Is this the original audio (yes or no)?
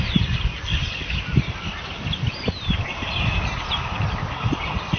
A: yes